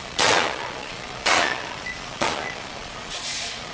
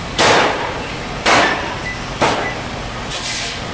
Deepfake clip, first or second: first